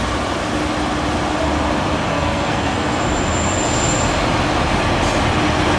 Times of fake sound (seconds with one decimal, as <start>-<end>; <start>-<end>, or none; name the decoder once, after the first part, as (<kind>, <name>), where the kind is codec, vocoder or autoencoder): 2.1-3.0 (codec, SNAC)